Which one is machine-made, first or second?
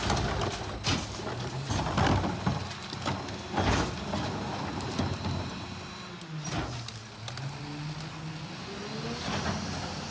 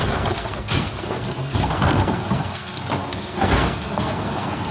second